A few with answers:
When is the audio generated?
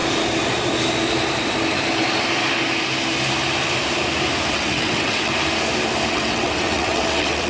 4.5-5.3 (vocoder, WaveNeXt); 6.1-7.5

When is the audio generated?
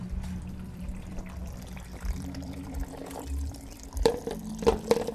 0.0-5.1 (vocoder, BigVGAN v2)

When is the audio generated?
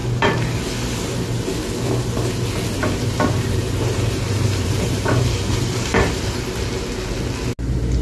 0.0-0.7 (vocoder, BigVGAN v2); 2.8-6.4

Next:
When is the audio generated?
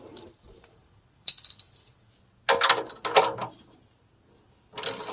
0.7-2.1 (vocoder, Vocos)